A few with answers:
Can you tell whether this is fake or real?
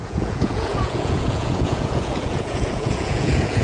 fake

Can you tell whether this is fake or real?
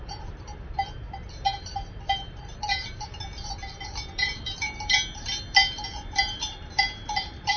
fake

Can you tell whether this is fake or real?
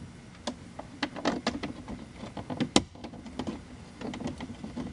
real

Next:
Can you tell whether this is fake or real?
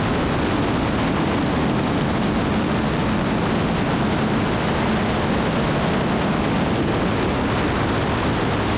real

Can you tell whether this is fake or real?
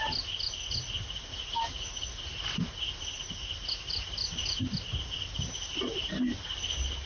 real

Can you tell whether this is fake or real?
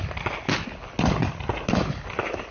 real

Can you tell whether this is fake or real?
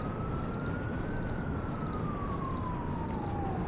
real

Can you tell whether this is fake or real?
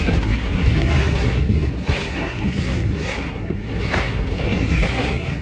fake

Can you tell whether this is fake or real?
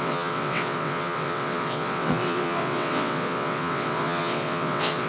fake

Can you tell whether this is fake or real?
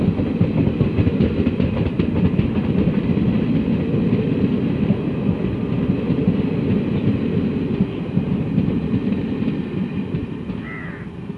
real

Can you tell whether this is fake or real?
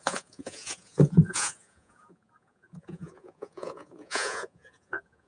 fake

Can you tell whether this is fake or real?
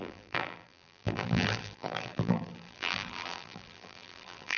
fake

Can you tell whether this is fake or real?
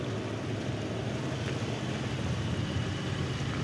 real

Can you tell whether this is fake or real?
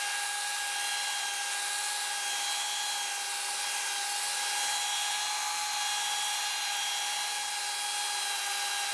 real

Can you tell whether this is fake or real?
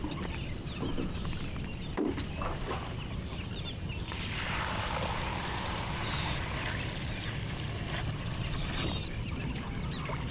real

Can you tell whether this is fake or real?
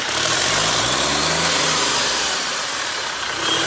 fake